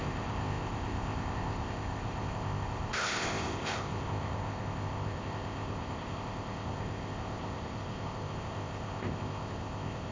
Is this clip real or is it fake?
fake